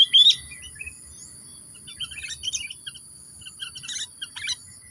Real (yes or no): yes